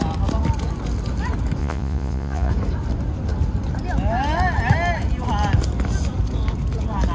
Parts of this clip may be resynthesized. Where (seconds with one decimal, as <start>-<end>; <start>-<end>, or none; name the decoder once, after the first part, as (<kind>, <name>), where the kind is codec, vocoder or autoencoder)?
1.6-2.5 (vocoder, Vocos)